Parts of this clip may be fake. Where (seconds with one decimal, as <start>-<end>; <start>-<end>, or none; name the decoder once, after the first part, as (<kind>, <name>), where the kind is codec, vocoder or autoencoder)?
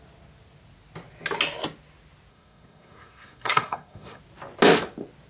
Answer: 2.3-4.2 (codec, SNAC)